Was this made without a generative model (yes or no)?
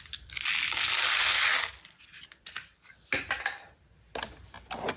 yes